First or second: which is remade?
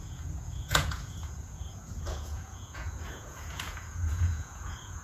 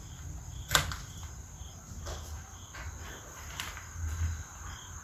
first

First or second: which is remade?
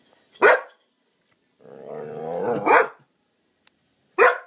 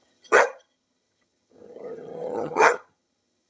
second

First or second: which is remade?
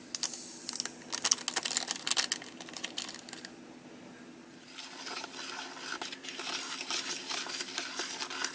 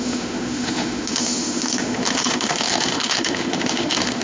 second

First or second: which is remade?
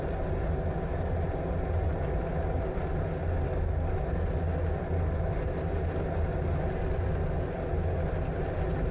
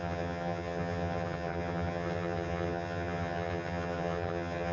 second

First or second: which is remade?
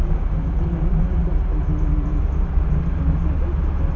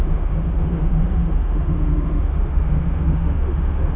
second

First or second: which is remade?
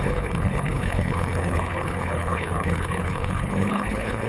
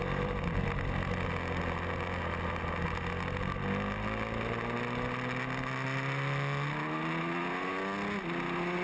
first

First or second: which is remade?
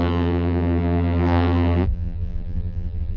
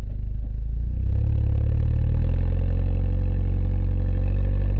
first